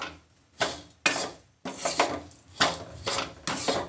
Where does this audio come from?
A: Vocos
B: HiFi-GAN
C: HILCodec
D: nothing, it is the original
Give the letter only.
D